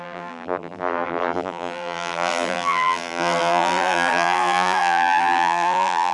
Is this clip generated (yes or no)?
yes